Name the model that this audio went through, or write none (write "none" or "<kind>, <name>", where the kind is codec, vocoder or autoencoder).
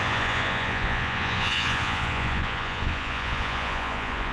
vocoder, Vocos